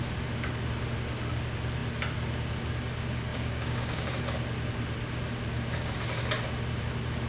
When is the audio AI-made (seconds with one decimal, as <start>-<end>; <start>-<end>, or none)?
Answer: 3.3-4.1